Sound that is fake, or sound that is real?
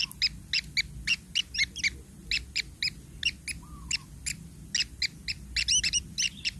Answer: real